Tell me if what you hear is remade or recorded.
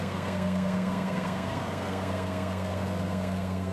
remade